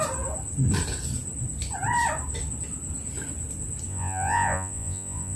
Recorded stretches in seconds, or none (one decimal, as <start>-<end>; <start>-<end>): 0.0-3.9